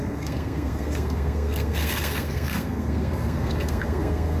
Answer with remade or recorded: remade